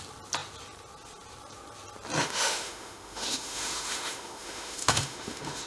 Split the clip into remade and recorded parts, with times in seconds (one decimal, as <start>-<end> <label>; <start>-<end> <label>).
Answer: 0.0-2.2 recorded; 2.2-5.7 remade

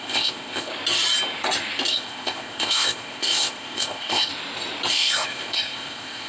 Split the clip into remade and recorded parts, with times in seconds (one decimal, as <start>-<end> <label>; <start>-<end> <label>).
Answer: 0.0-0.7 remade; 0.7-1.9 recorded; 1.9-4.3 remade; 4.3-4.9 recorded; 4.9-6.3 remade

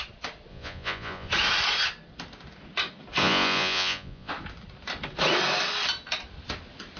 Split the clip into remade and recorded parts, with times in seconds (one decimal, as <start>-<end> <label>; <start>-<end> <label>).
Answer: 0.0-0.5 recorded; 0.5-1.3 remade; 1.3-3.2 recorded; 3.2-4.3 remade; 4.3-7.0 recorded

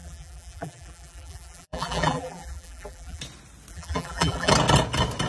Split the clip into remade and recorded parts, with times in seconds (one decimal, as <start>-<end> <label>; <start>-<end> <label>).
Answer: 0.0-3.2 remade; 3.2-3.7 recorded; 3.7-4.5 remade; 4.5-5.3 recorded

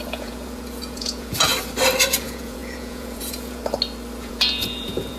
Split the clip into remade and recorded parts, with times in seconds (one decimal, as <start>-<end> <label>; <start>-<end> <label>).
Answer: 0.0-1.5 remade; 1.5-2.1 recorded; 2.1-3.6 remade; 3.6-4.2 recorded; 4.2-5.2 remade

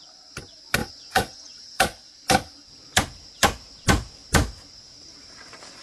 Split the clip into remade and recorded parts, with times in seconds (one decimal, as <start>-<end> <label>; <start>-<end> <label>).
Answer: 0.0-0.8 recorded; 0.8-1.8 remade; 1.8-5.8 recorded

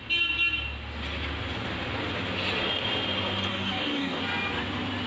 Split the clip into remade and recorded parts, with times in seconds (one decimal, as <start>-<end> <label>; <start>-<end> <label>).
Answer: 0.0-3.5 recorded; 3.5-4.2 remade; 4.2-5.1 recorded